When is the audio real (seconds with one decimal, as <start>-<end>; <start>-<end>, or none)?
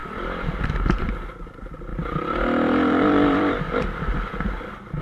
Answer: 0.0-1.9; 3.6-5.0